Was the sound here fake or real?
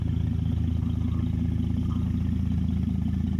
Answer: real